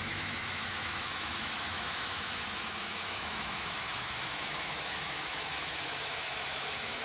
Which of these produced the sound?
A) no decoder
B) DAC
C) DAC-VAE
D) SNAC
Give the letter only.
C